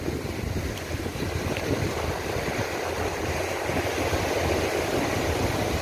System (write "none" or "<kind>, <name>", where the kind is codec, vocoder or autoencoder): none